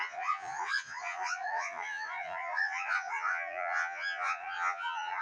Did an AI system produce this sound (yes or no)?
yes